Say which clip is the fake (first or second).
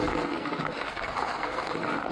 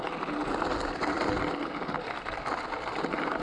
first